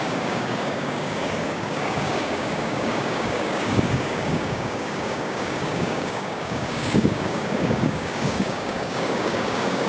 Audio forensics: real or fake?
fake